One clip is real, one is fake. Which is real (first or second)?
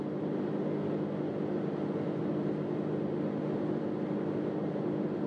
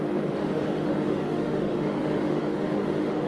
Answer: first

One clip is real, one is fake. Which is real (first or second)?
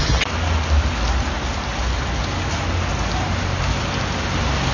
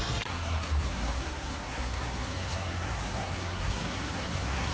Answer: first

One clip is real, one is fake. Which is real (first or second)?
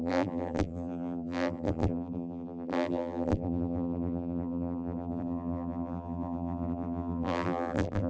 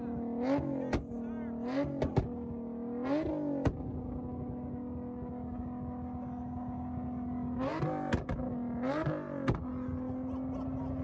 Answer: second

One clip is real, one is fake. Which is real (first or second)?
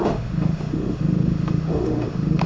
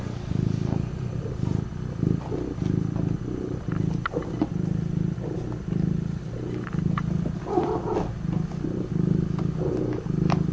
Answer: second